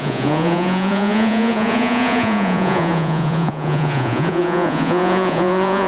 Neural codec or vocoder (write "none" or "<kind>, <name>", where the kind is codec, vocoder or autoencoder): vocoder, Vocos